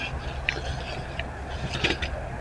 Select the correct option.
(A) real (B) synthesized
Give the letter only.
A